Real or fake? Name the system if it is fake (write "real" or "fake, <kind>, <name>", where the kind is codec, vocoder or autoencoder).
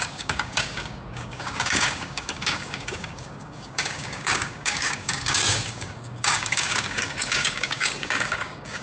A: fake, codec, DAC